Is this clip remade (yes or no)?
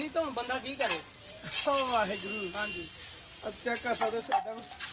no